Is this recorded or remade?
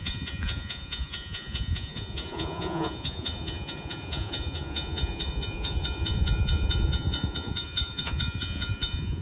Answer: remade